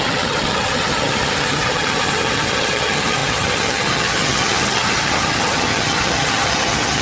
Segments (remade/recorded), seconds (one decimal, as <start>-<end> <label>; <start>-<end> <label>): 0.0-7.0 remade